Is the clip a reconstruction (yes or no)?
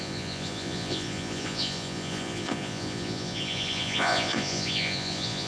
yes